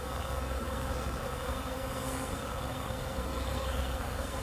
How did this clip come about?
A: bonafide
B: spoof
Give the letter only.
B